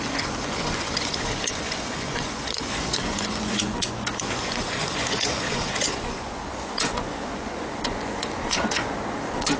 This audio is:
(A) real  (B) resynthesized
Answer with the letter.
B